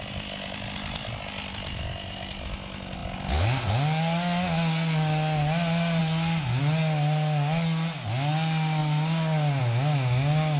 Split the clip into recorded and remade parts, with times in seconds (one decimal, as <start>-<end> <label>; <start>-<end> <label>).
0.0-10.6 recorded